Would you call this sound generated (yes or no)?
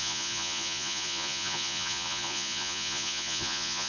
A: yes